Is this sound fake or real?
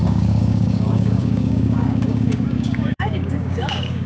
fake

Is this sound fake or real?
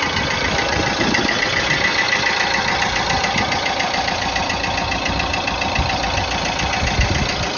real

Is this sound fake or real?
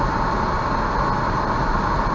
real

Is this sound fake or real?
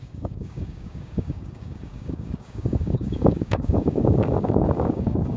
fake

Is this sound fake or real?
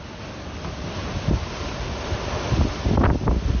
real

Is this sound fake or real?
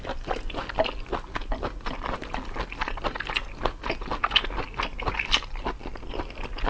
real